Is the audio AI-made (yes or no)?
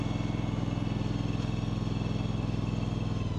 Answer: no